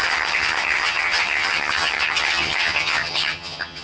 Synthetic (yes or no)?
yes